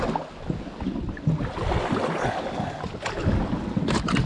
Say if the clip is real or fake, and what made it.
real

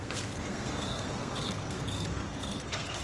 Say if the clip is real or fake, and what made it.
fake, codec, SNAC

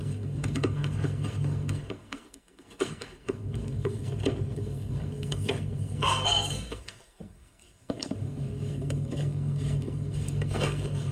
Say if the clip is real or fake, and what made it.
fake, codec, SNAC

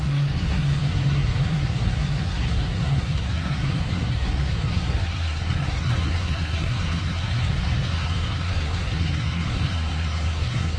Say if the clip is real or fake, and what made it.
fake, codec, SNAC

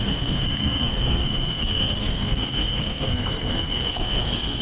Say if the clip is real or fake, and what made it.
fake, codec, SNAC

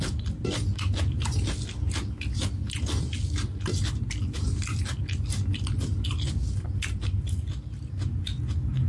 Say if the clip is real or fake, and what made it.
real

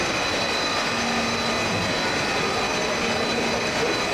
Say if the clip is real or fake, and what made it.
real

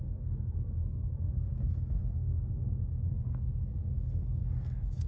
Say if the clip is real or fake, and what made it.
fake, codec, SNAC